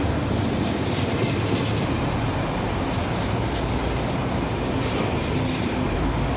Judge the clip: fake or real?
real